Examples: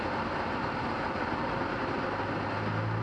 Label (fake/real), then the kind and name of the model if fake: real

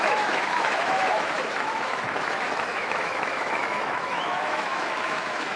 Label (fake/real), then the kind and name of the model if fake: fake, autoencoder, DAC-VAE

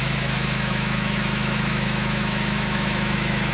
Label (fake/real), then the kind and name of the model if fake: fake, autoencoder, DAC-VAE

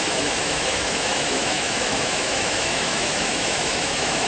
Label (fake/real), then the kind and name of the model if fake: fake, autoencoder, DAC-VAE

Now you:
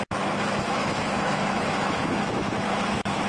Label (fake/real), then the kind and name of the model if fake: fake, autoencoder, DAC-VAE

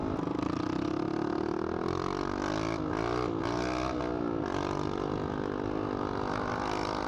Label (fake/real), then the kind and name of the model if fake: real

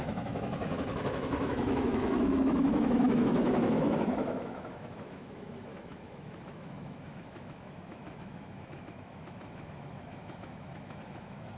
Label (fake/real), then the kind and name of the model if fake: fake, autoencoder, DAC-VAE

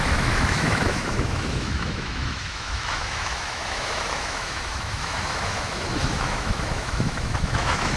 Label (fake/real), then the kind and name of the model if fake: fake, autoencoder, DAC-VAE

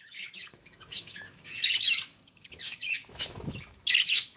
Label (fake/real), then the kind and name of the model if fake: fake, autoencoder, DAC-VAE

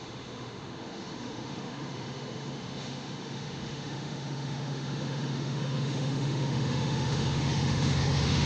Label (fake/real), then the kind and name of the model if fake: fake, autoencoder, DAC-VAE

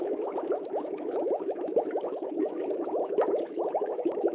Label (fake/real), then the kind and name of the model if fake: fake, autoencoder, DAC-VAE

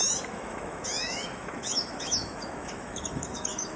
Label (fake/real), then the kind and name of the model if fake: fake, autoencoder, DAC-VAE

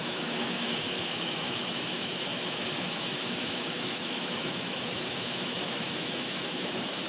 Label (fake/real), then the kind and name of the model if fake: fake, autoencoder, DAC-VAE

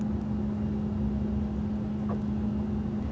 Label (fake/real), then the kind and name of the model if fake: real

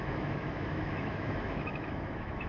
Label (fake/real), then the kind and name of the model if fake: fake, autoencoder, DAC-VAE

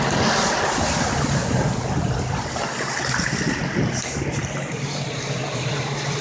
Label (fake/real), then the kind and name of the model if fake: real